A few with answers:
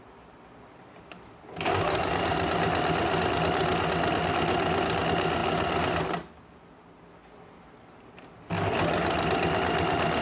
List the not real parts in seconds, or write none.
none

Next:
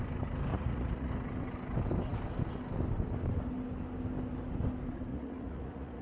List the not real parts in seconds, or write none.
0.5-1.1 (vocoder, Vocos); 5.1-6.0

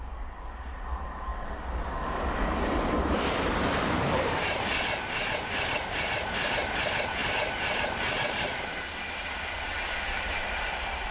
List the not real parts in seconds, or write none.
0.0-11.1 (vocoder, BigVGAN v2)

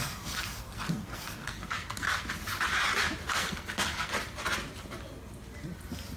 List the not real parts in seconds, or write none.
0.0-2.4 (codec, SNAC); 3.3-4.1

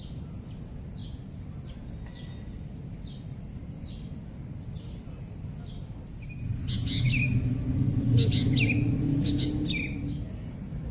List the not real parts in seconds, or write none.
none